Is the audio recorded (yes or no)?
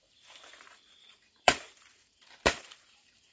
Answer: no